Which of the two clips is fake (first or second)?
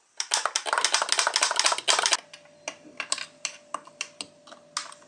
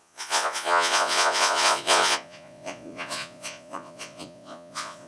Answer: second